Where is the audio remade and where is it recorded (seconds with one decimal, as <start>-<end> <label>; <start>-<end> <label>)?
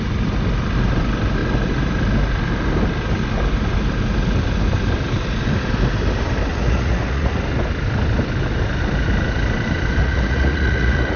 0.0-6.5 recorded; 6.5-7.4 remade; 7.4-10.0 recorded; 10.0-11.2 remade